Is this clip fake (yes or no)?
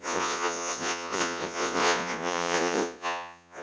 yes